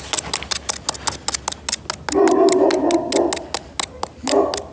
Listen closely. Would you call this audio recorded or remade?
recorded